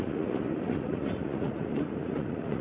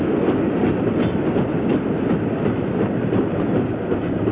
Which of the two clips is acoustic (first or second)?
second